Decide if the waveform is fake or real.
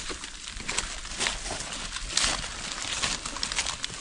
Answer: real